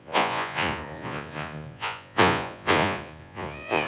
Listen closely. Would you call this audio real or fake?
fake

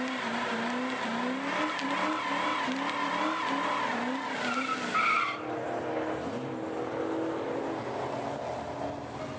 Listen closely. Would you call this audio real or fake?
real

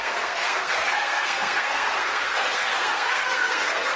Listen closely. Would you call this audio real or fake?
fake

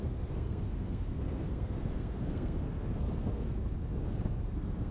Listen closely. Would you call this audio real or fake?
fake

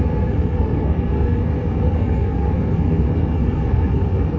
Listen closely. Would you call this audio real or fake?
fake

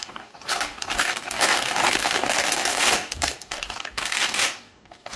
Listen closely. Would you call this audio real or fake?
fake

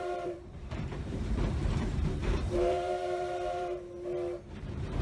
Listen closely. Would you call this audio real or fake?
fake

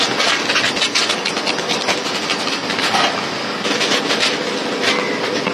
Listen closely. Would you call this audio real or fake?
real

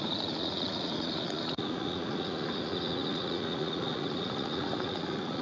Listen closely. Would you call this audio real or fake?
fake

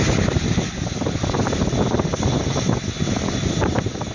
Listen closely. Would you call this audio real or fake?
real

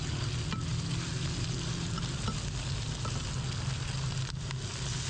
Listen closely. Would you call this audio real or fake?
real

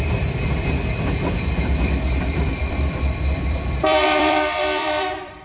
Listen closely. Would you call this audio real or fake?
fake